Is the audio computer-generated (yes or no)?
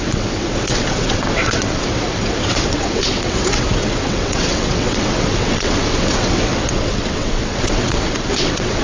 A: yes